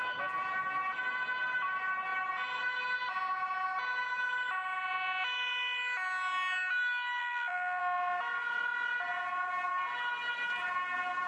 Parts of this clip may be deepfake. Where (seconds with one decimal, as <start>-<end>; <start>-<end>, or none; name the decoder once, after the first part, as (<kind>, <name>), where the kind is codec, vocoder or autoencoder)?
7.2-7.8 (vocoder, BigVGAN v2)